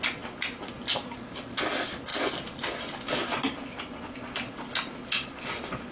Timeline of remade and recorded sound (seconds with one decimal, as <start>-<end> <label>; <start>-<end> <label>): 0.0-5.9 recorded